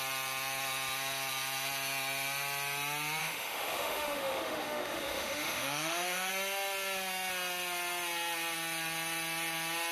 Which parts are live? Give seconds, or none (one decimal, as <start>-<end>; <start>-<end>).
0.0-3.2; 6.3-9.9